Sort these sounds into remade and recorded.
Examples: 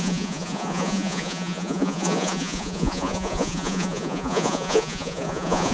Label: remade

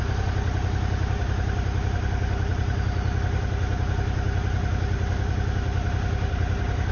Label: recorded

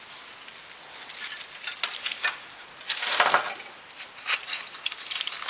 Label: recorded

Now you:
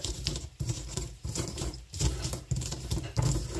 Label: remade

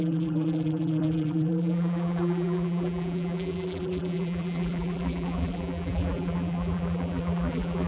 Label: remade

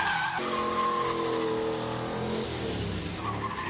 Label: recorded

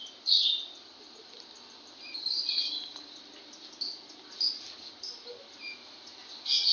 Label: recorded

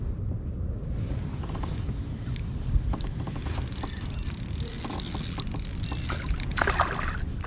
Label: remade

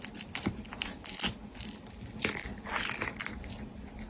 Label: recorded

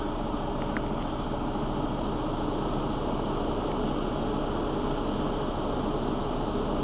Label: recorded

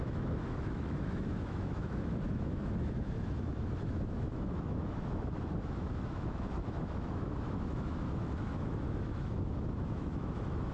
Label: remade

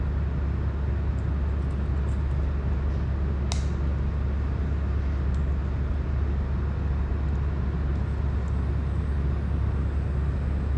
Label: recorded